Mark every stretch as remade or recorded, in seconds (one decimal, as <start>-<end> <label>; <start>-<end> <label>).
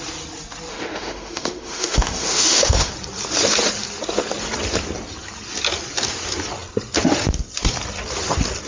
0.0-0.7 recorded; 0.7-2.9 remade; 2.9-8.7 recorded